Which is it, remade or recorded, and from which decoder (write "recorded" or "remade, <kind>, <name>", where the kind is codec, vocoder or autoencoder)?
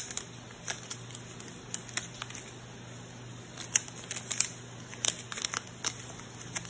recorded